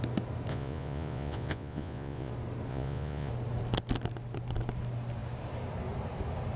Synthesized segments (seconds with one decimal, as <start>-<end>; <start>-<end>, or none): 0.5-2.3; 2.7-3.3